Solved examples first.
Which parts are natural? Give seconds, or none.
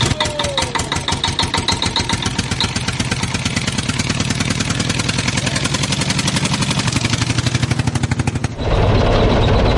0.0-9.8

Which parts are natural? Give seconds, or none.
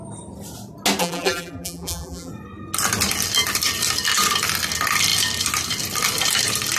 0.0-1.0; 2.3-6.8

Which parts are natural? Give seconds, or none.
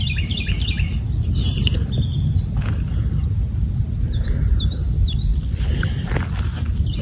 0.0-5.3; 5.8-7.0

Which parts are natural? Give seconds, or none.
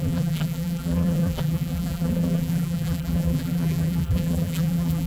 none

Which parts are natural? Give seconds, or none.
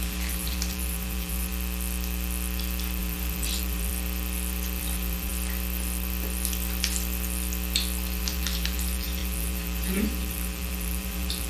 1.5-3.0; 3.9-4.8; 5.3-8.2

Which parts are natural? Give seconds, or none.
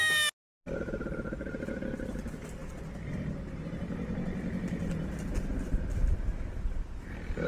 0.0-7.5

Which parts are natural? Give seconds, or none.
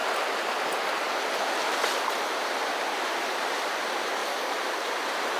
0.0-1.4; 4.2-5.0